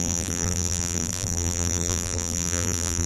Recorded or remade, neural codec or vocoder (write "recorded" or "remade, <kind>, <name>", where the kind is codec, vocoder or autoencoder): remade, vocoder, BigVGAN v2